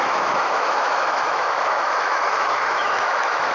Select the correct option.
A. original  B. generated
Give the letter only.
B